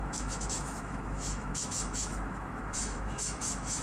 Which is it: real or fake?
fake